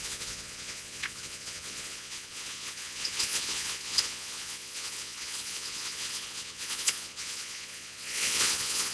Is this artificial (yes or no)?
yes